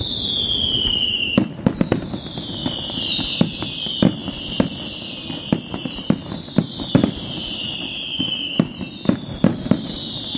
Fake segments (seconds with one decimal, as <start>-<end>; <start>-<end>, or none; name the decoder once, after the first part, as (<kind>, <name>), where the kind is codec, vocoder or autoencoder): 2.6-3.3 (vocoder, BigVGAN v2)